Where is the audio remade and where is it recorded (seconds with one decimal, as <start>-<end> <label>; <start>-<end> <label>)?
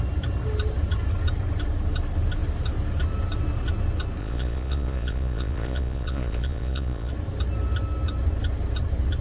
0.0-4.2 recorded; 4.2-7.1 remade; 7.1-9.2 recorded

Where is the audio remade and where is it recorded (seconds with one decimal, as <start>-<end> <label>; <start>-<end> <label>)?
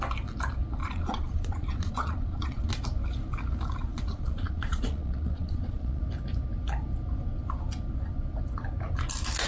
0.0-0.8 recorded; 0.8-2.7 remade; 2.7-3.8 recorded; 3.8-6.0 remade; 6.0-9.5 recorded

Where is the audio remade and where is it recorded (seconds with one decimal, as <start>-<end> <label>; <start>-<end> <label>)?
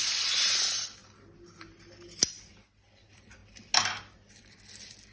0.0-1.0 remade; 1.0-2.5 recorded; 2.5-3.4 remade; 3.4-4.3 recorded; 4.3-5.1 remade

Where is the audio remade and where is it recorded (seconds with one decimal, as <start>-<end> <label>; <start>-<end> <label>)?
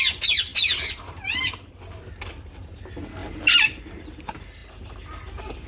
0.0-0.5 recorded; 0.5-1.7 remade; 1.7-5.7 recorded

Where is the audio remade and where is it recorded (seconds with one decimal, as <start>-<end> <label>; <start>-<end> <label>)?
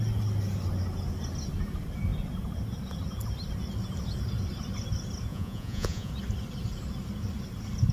0.0-5.3 recorded; 5.3-6.1 remade; 6.1-7.9 recorded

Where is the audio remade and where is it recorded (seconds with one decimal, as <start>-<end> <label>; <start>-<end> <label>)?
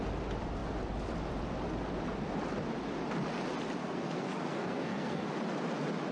0.0-3.8 recorded; 3.8-5.3 remade; 5.3-6.1 recorded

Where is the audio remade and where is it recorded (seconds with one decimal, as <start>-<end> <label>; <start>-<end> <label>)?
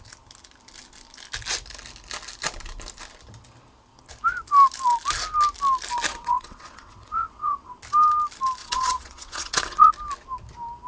0.0-6.1 recorded; 6.1-7.7 remade; 7.7-8.6 recorded; 8.6-9.9 remade; 9.9-10.9 recorded